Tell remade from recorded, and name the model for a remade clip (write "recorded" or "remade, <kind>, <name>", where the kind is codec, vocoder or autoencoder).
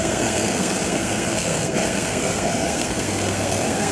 remade, codec, SNAC